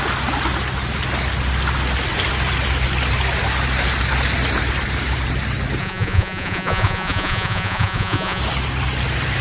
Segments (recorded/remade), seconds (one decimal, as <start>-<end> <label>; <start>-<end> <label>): 0.0-5.8 recorded; 5.8-8.4 remade; 8.4-9.4 recorded